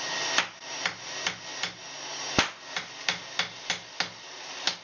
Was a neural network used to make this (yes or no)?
no